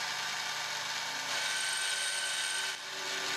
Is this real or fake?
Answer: real